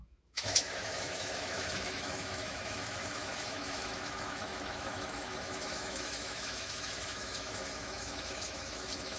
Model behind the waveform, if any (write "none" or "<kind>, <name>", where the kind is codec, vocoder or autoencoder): autoencoder, DAC-VAE